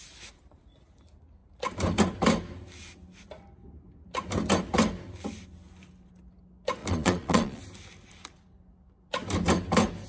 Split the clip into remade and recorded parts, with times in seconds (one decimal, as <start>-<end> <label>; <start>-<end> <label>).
0.0-6.8 recorded; 6.8-7.6 remade; 7.6-10.1 recorded